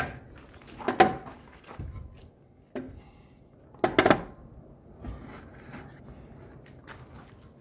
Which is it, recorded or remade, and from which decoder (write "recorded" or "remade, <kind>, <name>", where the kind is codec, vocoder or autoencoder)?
recorded